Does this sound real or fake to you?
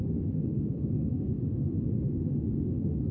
fake